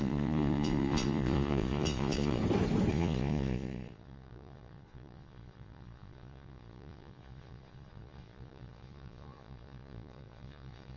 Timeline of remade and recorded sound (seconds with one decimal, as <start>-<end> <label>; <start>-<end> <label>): 0.0-2.4 remade; 2.4-2.9 recorded; 2.9-11.0 remade